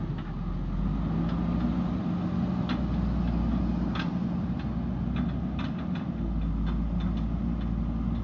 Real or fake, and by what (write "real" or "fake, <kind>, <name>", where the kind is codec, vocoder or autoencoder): real